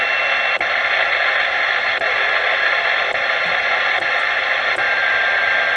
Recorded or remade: recorded